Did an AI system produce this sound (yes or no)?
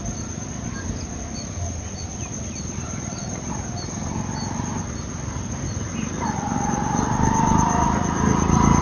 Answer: no